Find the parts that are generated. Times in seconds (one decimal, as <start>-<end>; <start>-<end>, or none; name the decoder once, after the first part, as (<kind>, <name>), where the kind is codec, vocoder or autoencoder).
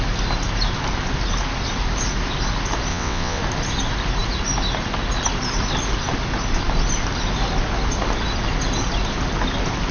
2.9-3.4 (vocoder, WaveNeXt)